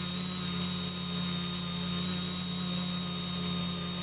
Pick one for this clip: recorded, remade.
recorded